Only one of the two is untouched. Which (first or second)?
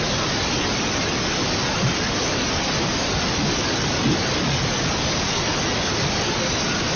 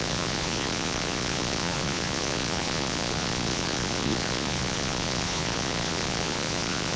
first